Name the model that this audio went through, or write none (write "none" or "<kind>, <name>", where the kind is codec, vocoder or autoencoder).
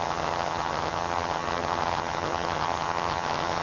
vocoder, HiFi-GAN